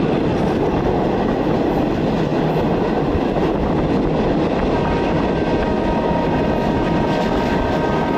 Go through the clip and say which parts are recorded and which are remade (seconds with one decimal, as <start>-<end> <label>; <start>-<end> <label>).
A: 0.0-8.2 recorded